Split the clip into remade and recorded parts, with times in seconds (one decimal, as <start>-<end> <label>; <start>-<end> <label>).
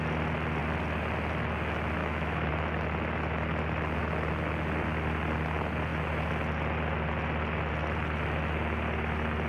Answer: 0.0-2.0 recorded; 2.0-2.5 remade; 2.5-9.5 recorded